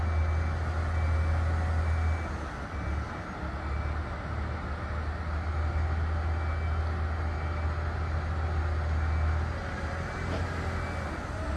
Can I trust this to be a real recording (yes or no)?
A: yes